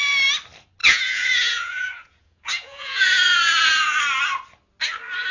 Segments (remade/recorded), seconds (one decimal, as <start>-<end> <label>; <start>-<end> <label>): 0.0-0.8 recorded; 0.8-4.0 remade; 4.0-5.3 recorded